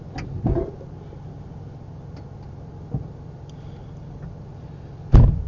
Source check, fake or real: real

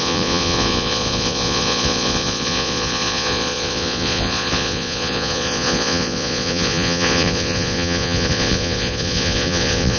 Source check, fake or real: fake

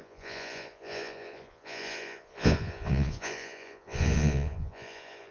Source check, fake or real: fake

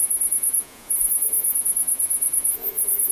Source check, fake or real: fake